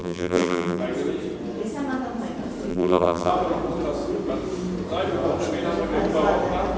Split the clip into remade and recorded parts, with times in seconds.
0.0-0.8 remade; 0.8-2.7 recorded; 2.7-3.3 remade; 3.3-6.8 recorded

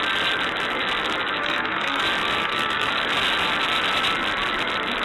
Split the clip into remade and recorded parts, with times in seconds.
0.0-1.4 recorded; 1.4-2.0 remade; 2.0-2.4 recorded; 2.4-2.9 remade; 2.9-5.0 recorded

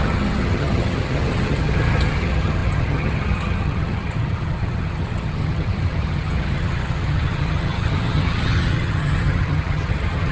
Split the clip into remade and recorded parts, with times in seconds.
0.0-10.3 remade

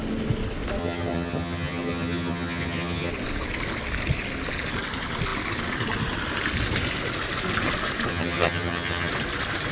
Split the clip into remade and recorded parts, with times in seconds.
0.0-0.8 recorded; 0.8-3.1 remade; 3.1-8.1 recorded; 8.1-9.1 remade; 9.1-9.7 recorded